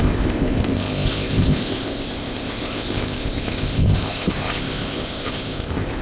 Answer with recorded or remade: remade